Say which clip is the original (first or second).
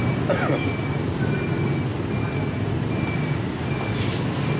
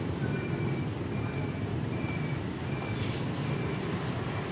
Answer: first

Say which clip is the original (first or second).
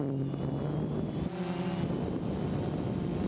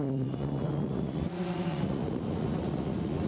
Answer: first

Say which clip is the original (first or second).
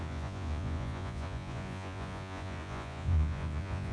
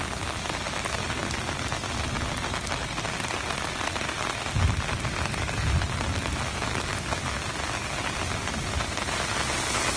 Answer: second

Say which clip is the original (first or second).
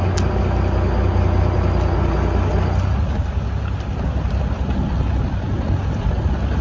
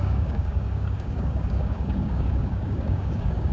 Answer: first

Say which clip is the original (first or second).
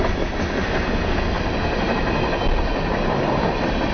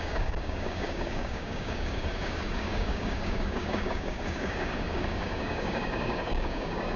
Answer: first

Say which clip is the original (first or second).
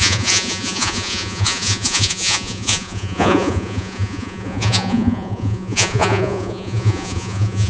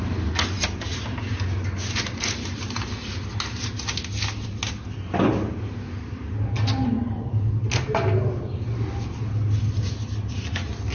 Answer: second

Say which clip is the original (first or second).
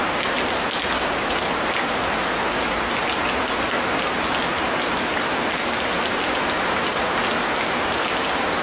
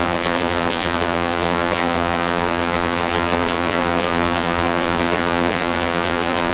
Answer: first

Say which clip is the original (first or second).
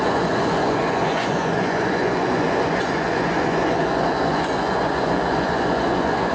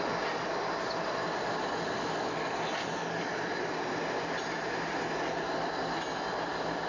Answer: second